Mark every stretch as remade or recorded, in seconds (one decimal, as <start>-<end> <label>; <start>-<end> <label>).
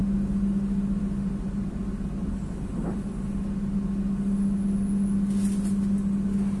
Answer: 0.0-6.6 recorded